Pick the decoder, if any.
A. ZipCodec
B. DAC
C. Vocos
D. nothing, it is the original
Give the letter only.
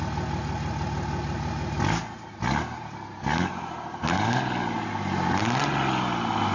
D